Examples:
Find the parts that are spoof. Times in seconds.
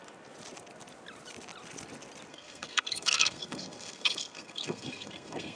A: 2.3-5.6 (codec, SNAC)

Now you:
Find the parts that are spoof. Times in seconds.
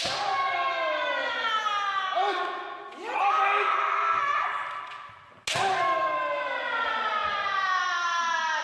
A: none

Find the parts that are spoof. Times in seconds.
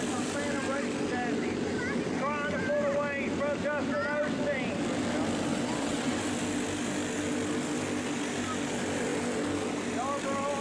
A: 5.5-6.2 (vocoder, WaveNeXt)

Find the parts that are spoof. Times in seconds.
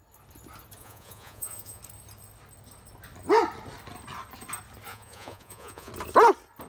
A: 0.8-1.8 (vocoder, Vocos); 4.9-5.9